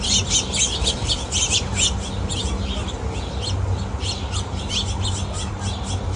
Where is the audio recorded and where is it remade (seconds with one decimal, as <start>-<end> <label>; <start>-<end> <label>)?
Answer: 0.0-6.2 recorded